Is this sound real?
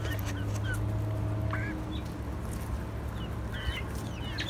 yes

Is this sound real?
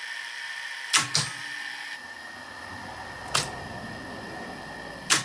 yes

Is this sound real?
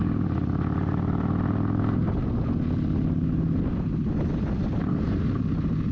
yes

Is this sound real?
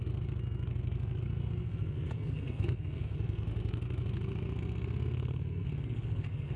no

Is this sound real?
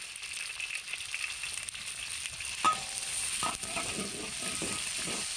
yes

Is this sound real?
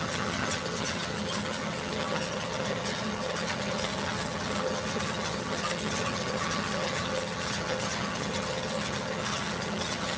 no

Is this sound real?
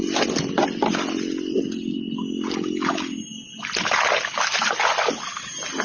yes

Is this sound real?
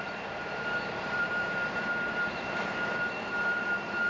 no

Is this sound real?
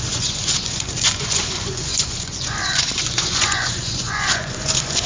no